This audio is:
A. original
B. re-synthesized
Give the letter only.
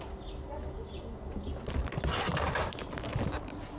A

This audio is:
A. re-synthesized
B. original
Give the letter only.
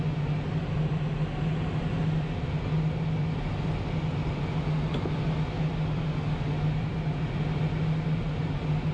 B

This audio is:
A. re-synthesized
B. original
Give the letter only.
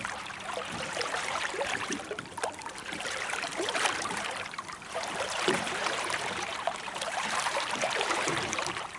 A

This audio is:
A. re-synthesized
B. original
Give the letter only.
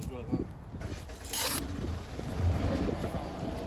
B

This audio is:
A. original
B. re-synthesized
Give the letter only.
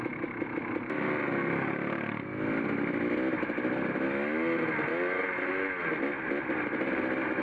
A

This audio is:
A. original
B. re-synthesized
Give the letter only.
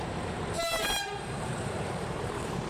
B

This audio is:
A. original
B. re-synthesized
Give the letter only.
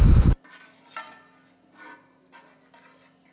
A